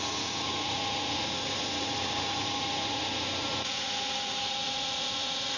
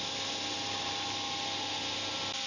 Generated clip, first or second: first